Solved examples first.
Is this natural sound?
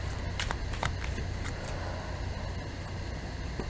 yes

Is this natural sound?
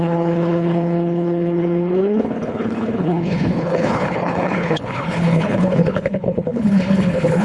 no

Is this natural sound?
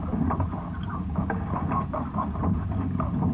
yes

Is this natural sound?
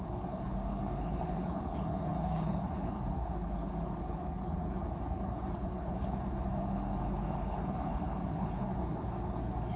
no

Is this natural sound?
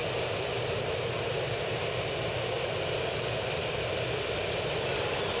yes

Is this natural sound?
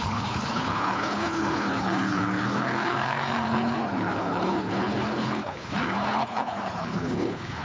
no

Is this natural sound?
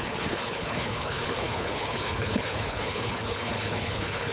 no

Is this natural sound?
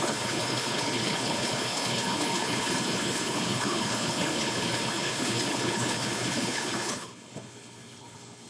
no